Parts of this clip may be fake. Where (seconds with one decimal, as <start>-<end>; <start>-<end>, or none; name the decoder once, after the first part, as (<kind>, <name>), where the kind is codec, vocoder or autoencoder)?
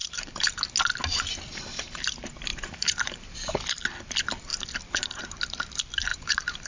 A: 0.0-0.6 (vocoder, BigVGAN v2); 2.5-3.5; 6.1-6.7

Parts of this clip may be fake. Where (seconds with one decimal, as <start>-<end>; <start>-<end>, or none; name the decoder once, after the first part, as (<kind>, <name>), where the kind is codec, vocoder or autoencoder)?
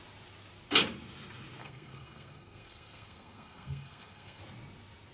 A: 1.6-4.4 (codec, SNAC)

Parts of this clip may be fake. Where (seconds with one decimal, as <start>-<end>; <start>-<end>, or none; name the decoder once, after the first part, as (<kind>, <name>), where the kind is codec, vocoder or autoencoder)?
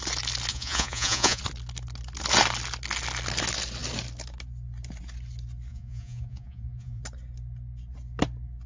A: 0.5-1.4 (vocoder, Vocos); 5.7-7.0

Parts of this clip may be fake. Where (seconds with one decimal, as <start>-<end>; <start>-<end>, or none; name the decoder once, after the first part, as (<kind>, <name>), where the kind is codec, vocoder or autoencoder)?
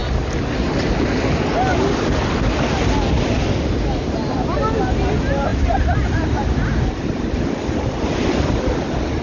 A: none